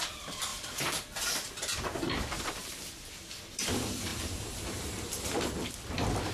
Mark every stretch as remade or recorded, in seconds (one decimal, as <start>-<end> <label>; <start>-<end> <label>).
0.0-6.3 remade